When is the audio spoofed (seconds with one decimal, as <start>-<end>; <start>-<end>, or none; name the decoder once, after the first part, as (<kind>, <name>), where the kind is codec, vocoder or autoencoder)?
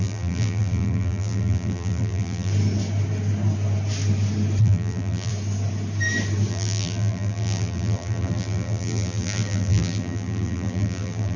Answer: 0.0-2.5 (vocoder, BigVGAN v2); 4.6-5.3; 6.5-11.4